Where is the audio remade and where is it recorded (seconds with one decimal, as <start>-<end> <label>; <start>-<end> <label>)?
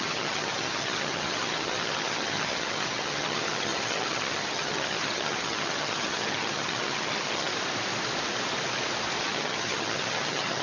0.0-7.5 remade; 7.5-9.2 recorded; 9.2-10.6 remade